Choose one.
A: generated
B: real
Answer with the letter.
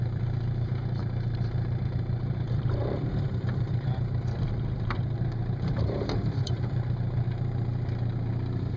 A